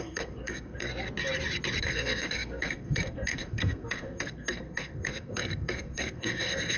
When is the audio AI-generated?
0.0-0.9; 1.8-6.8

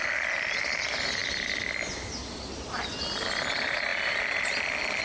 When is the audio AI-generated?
none

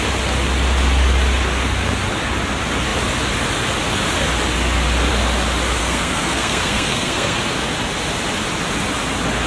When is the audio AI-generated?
5.8-7.4

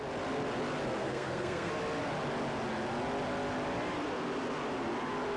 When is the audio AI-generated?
1.0-1.7

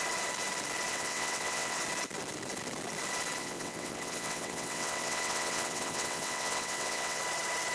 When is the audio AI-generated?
0.9-1.8; 3.4-7.2

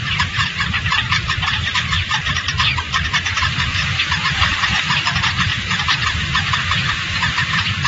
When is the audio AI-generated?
0.9-5.1